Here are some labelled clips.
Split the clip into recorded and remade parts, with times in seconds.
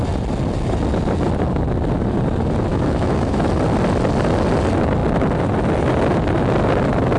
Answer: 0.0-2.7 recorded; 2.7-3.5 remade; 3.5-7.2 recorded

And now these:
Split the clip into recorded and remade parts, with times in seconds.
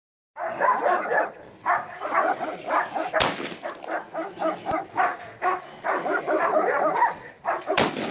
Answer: 0.0-4.9 recorded; 4.9-5.6 remade; 5.6-8.1 recorded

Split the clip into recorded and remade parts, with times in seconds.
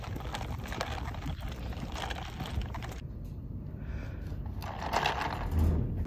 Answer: 0.0-6.1 recorded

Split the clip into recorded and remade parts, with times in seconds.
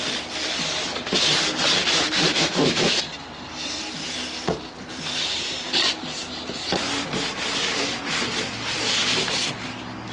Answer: 0.0-2.3 recorded; 2.3-3.0 remade; 3.0-10.1 recorded